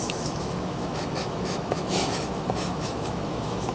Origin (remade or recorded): remade